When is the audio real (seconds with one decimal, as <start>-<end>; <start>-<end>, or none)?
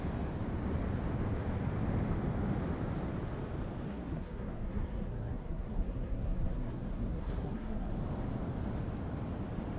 0.0-3.9; 7.9-9.8